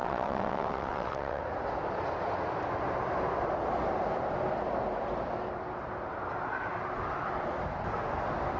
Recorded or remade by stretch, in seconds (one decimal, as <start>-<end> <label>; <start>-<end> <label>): 0.0-1.4 remade; 1.4-8.6 recorded

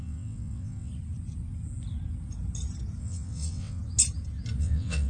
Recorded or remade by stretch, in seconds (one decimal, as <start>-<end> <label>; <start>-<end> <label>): 0.0-0.9 remade; 0.9-3.0 recorded; 3.0-3.8 remade; 3.8-4.6 recorded; 4.6-5.1 remade

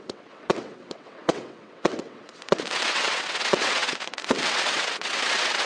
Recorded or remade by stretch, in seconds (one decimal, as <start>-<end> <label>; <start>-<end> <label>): 0.0-5.7 remade

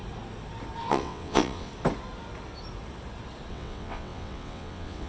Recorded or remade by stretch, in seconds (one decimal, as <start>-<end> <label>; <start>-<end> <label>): 0.0-0.9 recorded; 0.9-1.7 remade; 1.7-3.5 recorded; 3.5-5.1 remade

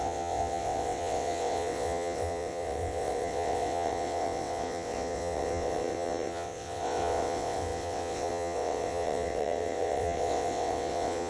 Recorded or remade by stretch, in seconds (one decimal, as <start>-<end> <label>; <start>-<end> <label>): 0.0-11.3 remade